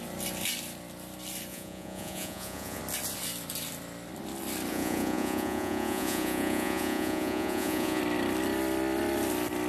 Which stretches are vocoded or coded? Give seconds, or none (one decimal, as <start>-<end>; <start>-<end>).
1.5-2.8; 4.7-8.0

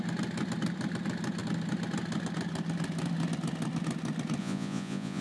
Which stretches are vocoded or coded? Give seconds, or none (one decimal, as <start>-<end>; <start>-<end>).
4.4-5.2